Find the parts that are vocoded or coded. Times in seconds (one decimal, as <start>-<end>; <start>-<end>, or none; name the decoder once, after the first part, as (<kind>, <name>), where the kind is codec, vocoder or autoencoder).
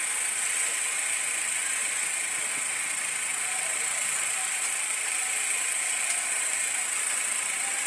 1.8-2.5 (vocoder, BigVGAN v2); 3.3-7.9